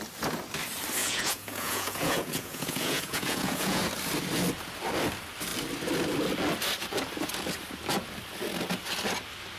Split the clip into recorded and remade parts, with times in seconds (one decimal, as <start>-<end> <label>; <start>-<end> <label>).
0.0-1.0 recorded; 1.0-3.8 remade; 3.8-9.6 recorded